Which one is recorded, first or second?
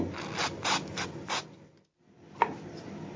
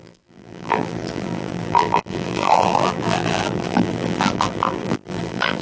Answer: first